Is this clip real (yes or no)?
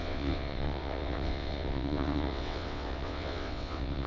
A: no